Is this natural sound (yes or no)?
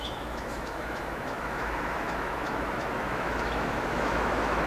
no